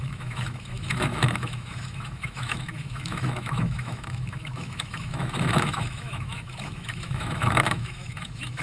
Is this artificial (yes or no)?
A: yes